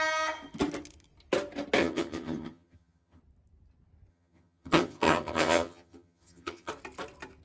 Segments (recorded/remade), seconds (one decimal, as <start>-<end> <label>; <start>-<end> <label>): 0.0-1.8 recorded; 1.8-3.2 remade; 3.2-4.1 recorded; 4.1-6.7 remade; 6.7-7.4 recorded